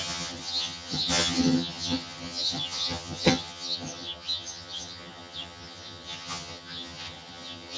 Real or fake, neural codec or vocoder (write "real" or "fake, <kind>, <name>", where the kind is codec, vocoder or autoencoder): fake, vocoder, HiFi-GAN